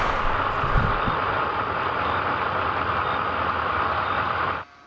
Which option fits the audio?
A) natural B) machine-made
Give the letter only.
A